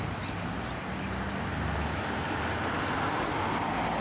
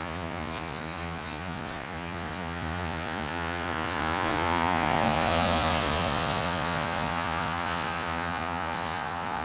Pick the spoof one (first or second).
second